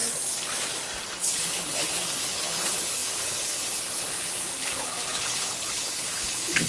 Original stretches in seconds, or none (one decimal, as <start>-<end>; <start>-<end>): 0.0-1.1

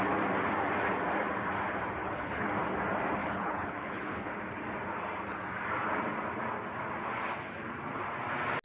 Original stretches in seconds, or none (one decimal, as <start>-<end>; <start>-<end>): 0.0-2.0; 2.5-3.2; 4.3-8.6

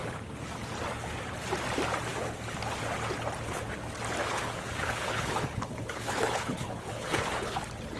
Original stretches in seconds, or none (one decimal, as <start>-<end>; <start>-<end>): 0.0-4.2; 7.6-8.0

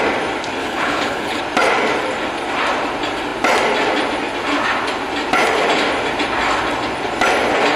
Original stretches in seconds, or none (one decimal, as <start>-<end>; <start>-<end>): 0.0-0.6; 1.4-7.8

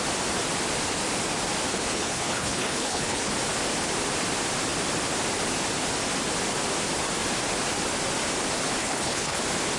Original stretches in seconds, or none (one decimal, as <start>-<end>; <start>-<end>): 0.0-1.7; 3.3-8.8; 9.4-9.8

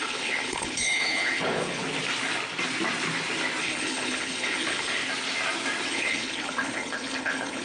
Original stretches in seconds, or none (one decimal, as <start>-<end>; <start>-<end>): 1.8-3.6; 5.0-5.9